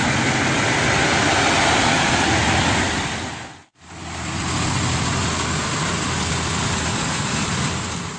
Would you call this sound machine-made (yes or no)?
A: no